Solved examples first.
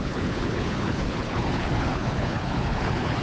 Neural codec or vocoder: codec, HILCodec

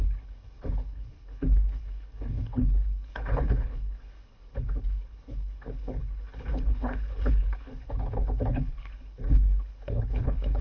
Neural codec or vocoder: codec, HILCodec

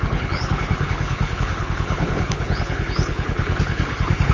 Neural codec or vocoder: codec, HILCodec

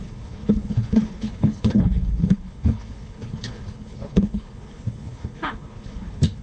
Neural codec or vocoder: codec, HILCodec